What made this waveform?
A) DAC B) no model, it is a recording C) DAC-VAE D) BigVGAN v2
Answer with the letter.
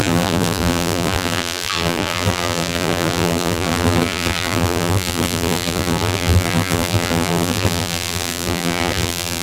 D